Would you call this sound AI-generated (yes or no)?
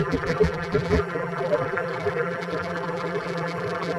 yes